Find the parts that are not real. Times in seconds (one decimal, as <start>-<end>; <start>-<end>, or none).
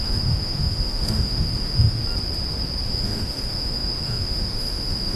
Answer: 0.0-2.0; 2.9-5.2